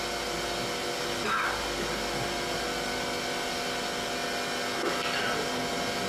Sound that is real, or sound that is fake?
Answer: real